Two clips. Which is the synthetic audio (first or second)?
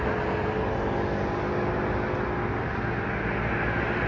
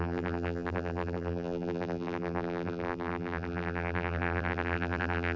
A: second